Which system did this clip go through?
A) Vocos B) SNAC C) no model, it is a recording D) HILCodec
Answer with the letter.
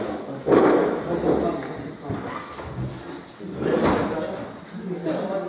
C